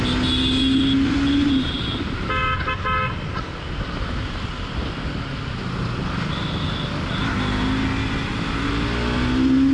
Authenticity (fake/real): real